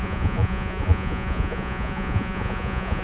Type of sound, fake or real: fake